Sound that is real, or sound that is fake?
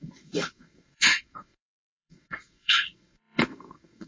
fake